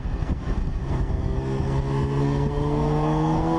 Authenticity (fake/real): fake